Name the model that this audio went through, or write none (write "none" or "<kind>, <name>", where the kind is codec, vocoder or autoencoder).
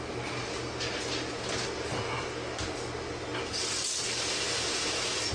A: none